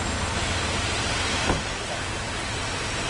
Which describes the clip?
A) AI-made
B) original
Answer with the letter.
B